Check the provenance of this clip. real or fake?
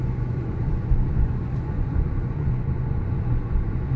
fake